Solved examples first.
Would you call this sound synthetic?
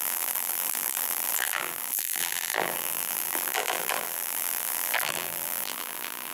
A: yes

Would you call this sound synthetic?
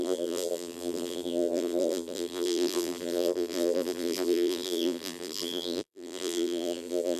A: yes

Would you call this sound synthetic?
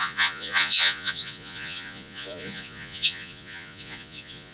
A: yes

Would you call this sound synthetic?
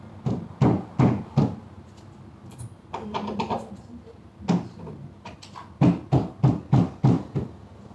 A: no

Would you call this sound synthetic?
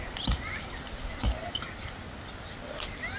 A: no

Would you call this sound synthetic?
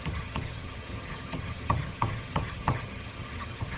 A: yes